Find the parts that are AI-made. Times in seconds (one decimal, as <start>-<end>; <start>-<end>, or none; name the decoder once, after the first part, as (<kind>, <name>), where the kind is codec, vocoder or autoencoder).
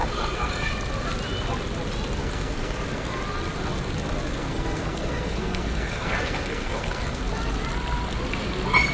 0.0-0.7 (codec, SNAC); 2.2-3.2; 4.3-7.2